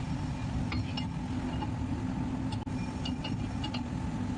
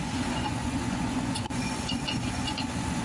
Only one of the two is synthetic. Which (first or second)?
second